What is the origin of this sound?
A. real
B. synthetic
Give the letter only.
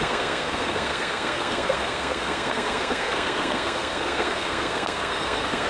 B